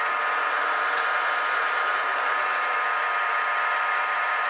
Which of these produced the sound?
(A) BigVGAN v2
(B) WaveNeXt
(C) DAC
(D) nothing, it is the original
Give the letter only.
A